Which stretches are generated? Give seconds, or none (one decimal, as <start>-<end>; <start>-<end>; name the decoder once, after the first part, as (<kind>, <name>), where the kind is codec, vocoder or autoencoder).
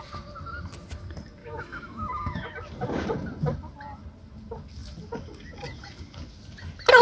1.4-2.5 (autoencoder, DAC-VAE)